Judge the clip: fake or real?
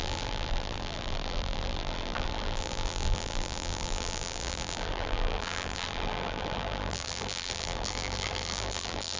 fake